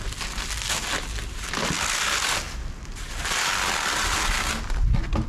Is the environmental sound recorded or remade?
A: recorded